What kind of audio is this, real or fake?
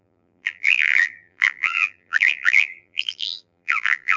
fake